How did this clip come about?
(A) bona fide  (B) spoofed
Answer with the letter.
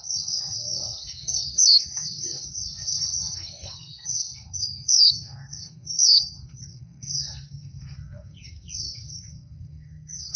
B